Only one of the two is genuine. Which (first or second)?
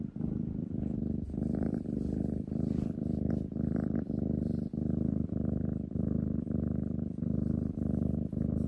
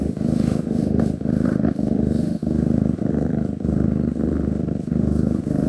first